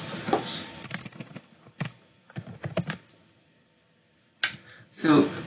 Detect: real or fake real